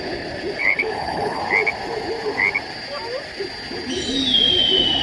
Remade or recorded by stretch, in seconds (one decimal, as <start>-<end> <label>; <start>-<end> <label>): 0.0-0.6 recorded; 0.6-1.4 remade; 1.4-5.0 recorded